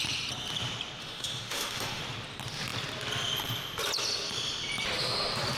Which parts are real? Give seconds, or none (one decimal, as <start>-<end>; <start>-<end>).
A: 0.0-1.0; 2.0-5.6

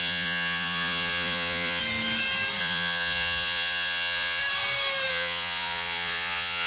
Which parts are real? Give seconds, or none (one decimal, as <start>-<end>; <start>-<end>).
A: 1.8-2.6; 4.4-5.1

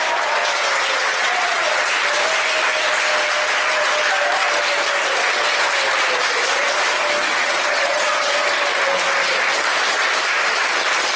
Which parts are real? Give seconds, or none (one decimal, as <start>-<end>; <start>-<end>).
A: 0.0-0.4; 1.9-7.2; 8.3-11.2

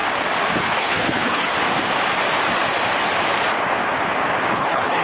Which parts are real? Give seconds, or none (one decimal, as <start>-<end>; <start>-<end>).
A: 0.0-0.6; 1.5-4.5

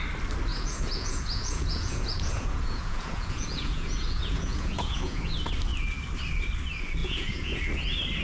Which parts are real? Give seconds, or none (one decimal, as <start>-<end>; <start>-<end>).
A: 0.0-0.5; 5.2-7.0; 7.6-8.2

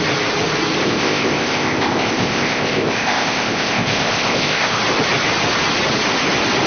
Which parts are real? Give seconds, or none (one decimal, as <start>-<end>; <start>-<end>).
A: 0.0-0.8; 4.8-6.7

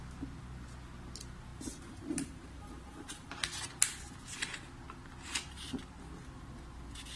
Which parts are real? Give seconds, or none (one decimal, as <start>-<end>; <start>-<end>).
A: 0.0-1.5; 3.3-7.2

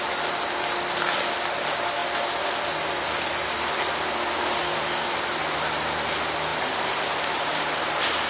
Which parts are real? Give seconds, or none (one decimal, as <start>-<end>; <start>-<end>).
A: 0.0-4.6; 5.4-6.5; 7.5-8.3